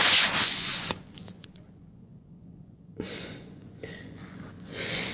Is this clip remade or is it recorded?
remade